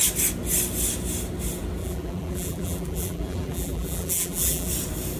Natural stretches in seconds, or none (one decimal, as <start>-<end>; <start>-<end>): 0.0-1.8; 4.7-5.2